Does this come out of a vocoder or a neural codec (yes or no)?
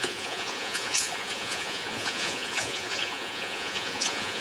yes